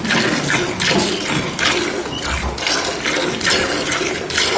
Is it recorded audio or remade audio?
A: recorded